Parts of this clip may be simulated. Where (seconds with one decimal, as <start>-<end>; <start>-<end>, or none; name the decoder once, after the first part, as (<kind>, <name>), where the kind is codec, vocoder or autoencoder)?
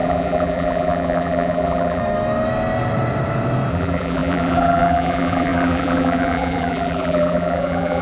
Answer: 0.0-2.0 (vocoder, BigVGAN v2); 3.7-8.0